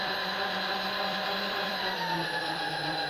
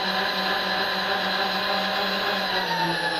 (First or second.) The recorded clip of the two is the second